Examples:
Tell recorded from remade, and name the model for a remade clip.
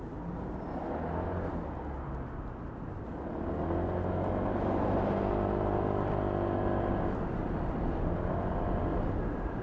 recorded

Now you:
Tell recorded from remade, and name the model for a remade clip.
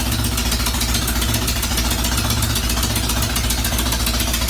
recorded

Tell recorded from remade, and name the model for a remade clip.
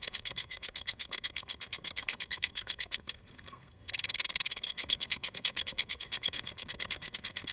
remade, codec, SNAC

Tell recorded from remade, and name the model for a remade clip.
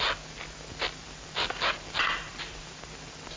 recorded